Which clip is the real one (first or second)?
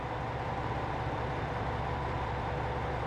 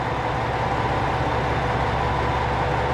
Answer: second